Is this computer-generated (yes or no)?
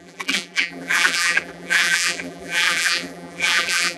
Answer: yes